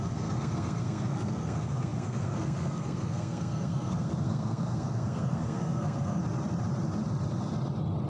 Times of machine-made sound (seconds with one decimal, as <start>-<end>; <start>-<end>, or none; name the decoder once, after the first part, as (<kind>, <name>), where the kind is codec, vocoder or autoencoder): 0.0-6.2 (codec, SNAC)

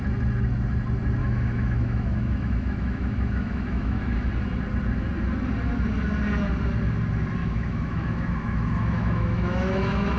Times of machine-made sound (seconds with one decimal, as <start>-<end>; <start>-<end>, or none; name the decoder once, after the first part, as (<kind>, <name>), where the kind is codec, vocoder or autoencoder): 1.2-4.3 (autoencoder, DAC-VAE); 7.4-10.2